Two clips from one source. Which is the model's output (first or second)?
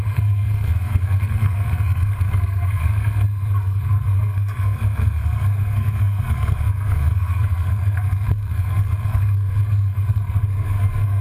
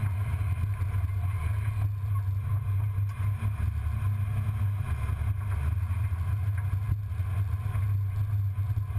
first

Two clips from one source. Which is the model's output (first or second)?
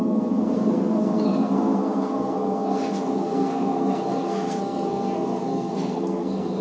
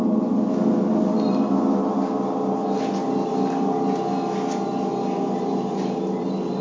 first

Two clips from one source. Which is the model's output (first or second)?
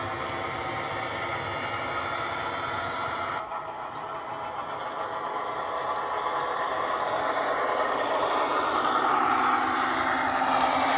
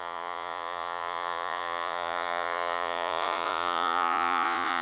second